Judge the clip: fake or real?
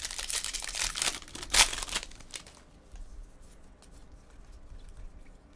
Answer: real